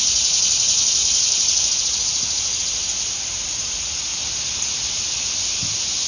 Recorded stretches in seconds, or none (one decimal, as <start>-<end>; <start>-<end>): 4.1-5.0